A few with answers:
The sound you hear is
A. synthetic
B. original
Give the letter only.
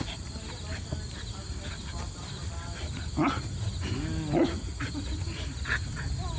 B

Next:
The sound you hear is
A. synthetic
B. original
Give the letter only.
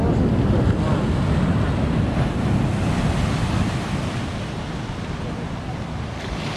B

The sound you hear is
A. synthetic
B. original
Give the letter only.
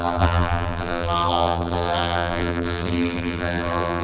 A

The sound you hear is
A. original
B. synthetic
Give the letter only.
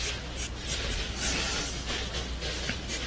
A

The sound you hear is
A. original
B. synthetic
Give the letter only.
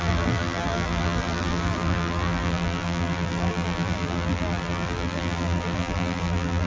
B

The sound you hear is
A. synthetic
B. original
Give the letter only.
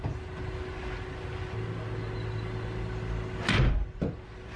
B